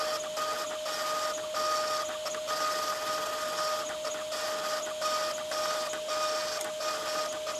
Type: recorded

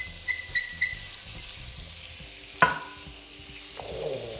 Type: recorded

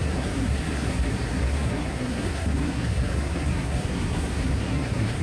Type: remade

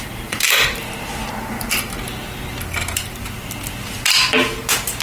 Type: recorded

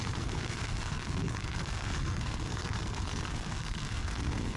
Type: remade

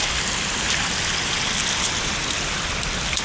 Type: recorded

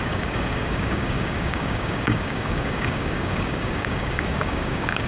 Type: remade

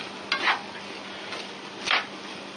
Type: recorded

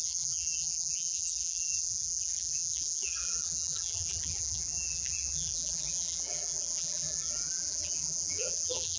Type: remade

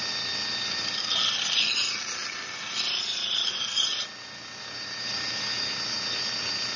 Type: recorded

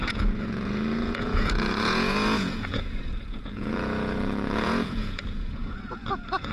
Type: remade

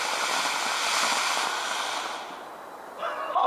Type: recorded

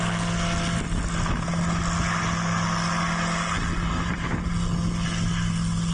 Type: recorded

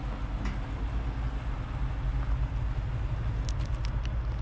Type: recorded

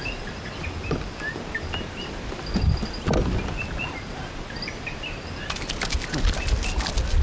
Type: recorded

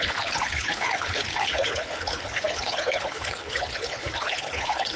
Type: remade